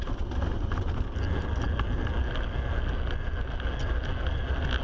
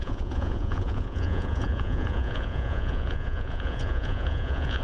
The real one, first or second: first